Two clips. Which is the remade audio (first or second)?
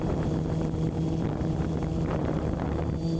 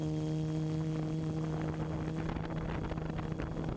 first